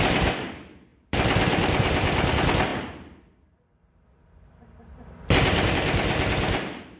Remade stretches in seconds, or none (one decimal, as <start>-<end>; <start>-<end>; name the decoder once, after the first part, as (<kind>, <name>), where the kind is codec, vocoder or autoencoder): none